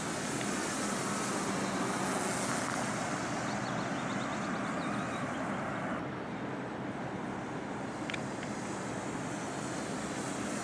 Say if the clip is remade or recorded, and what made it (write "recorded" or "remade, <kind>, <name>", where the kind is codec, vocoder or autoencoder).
recorded